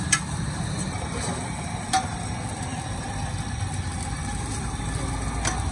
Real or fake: real